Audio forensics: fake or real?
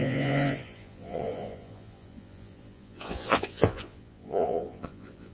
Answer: fake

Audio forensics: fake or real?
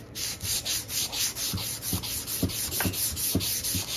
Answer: real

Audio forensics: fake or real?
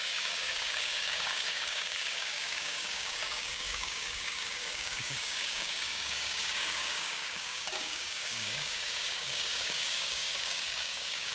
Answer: fake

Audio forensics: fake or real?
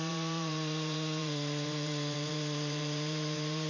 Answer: fake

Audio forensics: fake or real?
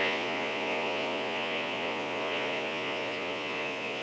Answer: fake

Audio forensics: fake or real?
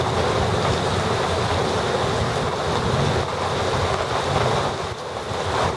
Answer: real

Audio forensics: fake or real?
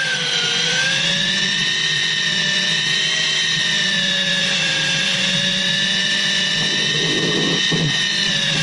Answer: fake